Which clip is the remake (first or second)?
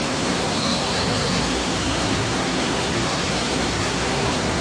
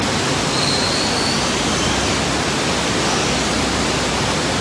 first